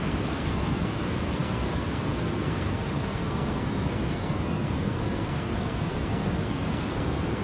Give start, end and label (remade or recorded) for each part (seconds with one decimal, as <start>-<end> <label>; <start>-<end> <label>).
0.0-7.4 remade